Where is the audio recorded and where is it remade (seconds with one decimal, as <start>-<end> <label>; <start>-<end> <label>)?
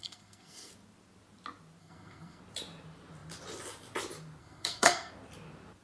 0.0-0.7 remade; 0.7-1.8 recorded; 1.8-2.4 remade; 2.4-4.4 recorded; 4.4-5.1 remade; 5.1-5.8 recorded